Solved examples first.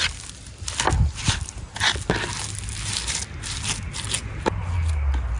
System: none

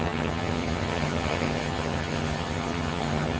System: vocoder, HiFi-GAN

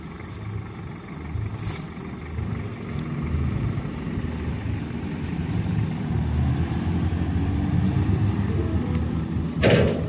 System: none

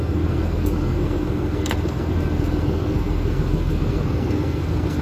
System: codec, SNAC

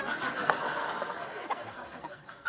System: codec, SNAC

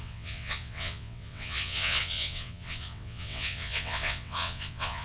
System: vocoder, WaveNeXt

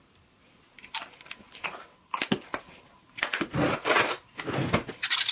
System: none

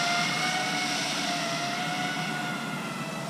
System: none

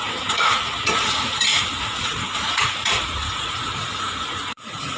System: vocoder, Vocos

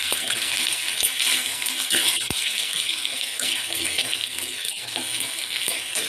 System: codec, SNAC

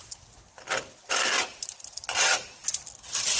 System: none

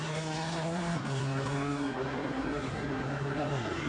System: codec, SNAC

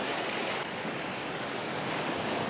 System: codec, DAC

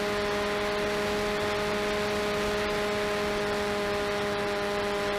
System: none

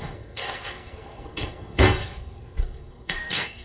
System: codec, SNAC